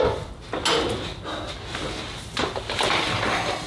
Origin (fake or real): real